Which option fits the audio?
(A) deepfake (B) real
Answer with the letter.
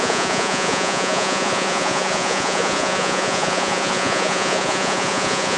A